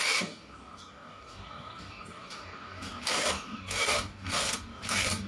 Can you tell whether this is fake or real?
fake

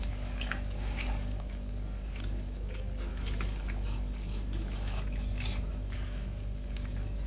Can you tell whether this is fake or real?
fake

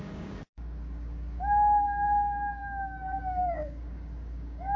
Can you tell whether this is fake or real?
fake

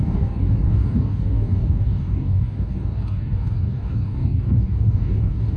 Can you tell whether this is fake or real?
fake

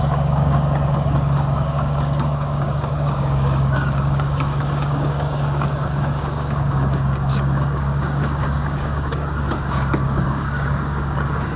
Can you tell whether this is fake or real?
fake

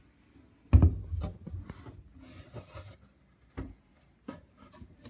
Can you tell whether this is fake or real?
real